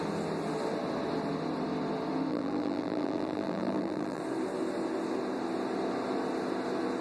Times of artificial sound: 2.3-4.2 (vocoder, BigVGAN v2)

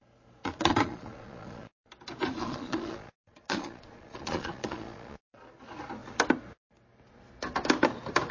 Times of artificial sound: 0.4-1.9 (vocoder, Vocos); 2.4-5.4

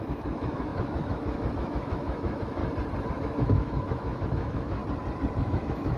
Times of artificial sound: 0.0-2.6 (autoencoder, DAC-VAE); 3.1-4.8; 5.4-6.0

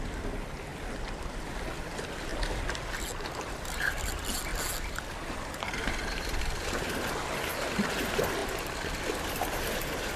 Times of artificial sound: none

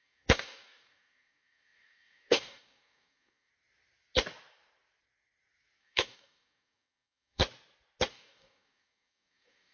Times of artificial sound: 0.0-3.5 (codec, DAC); 5.8-7.4; 8.1-9.7

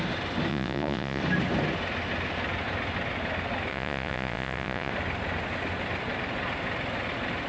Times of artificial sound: 0.5-1.2 (vocoder, Vocos); 3.7-4.9

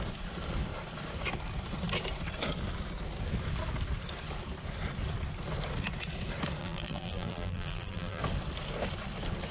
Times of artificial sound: 6.6-8.2 (vocoder, BigVGAN v2)

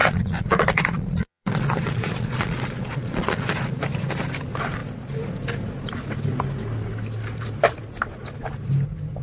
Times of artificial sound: 0.0-3.8 (vocoder, Vocos)